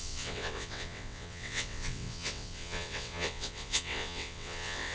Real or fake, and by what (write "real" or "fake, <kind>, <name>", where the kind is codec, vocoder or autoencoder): fake, vocoder, WaveNeXt